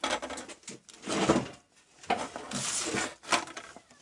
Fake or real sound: real